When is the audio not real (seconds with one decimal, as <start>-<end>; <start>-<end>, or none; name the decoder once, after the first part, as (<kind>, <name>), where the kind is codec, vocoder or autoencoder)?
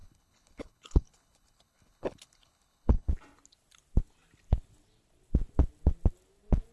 0.0-3.1 (codec, HILCodec)